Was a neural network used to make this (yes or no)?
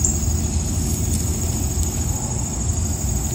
no